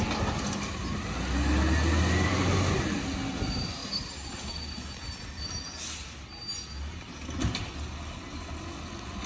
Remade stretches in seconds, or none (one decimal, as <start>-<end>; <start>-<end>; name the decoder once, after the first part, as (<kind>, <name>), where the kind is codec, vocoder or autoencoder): 3.8-4.5 (vocoder, BigVGAN v2)